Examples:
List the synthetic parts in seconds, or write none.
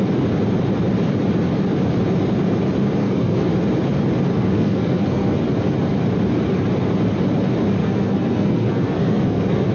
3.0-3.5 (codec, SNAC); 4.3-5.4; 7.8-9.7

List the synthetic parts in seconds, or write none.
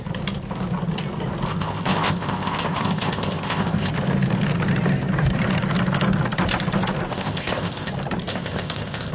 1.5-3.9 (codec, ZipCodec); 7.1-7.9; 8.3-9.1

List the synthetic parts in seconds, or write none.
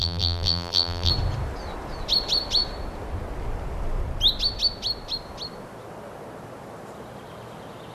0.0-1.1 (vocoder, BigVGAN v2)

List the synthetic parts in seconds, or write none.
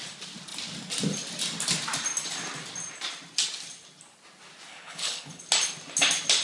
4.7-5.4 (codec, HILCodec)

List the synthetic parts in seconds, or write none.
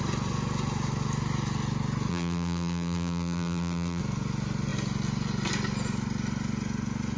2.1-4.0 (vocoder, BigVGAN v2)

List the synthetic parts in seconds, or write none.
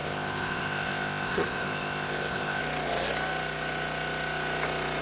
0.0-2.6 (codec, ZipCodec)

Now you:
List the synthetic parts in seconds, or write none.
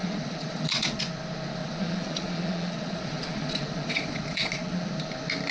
0.0-1.0 (vocoder, Vocos); 1.6-4.9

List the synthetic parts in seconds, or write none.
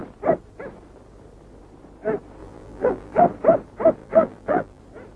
2.4-3.2 (vocoder, BigVGAN v2); 4.0-4.8